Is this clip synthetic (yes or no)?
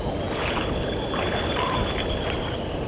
no